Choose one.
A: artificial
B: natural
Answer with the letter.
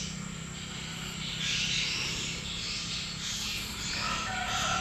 B